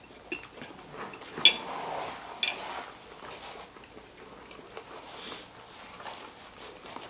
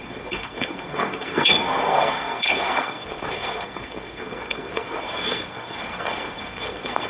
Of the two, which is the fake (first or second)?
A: second